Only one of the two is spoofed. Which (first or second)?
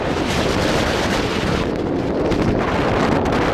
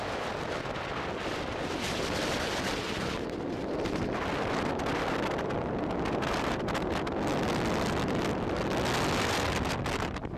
first